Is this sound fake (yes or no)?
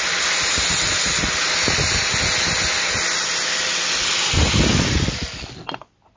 no